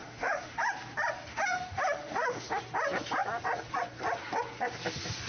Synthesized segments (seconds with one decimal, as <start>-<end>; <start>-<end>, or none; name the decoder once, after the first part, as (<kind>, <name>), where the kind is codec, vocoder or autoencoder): 0.0-0.7 (autoencoder, DAC-VAE); 1.3-2.6